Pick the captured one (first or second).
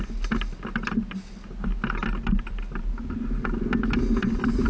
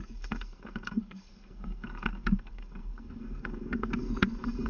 first